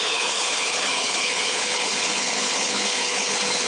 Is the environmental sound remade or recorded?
remade